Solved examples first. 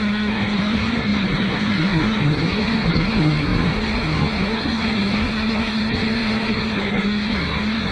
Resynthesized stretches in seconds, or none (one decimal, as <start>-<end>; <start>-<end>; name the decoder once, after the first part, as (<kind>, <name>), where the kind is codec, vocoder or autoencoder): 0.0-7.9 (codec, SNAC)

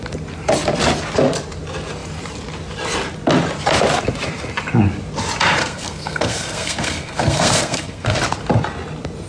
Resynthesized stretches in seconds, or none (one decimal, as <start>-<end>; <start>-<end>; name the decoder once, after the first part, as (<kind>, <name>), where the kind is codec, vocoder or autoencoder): 5.6-8.2 (codec, SNAC)

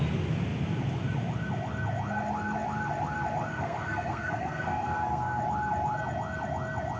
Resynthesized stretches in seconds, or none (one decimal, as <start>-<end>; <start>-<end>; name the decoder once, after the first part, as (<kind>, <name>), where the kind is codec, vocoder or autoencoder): 3.5-5.4 (codec, SNAC)